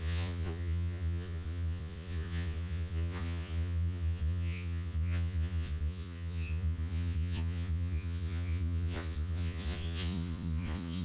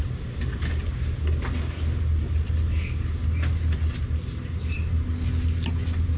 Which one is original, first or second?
second